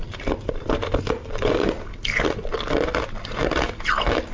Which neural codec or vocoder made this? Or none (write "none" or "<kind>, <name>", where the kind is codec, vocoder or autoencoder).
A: none